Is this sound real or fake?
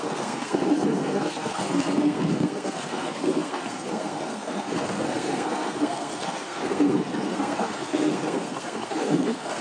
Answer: fake